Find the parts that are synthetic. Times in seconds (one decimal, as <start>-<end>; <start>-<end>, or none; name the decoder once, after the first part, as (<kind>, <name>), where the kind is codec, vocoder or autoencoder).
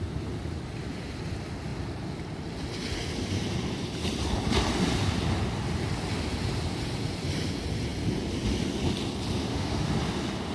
9.4-9.9 (autoencoder, DAC-VAE)